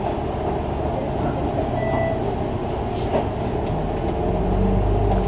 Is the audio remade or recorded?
recorded